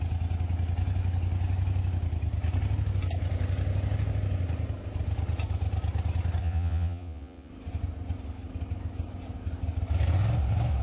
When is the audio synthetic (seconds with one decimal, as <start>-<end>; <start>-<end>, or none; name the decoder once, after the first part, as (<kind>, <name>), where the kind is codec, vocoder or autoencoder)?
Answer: 6.4-7.5 (vocoder, Vocos)